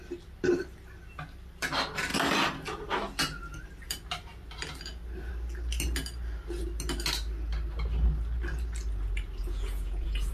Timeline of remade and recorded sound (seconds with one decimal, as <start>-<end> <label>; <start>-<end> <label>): 0.0-9.4 recorded; 9.4-10.3 remade